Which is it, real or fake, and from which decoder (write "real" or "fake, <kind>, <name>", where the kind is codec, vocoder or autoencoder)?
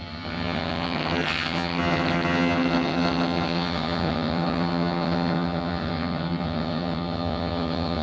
fake, vocoder, HiFi-GAN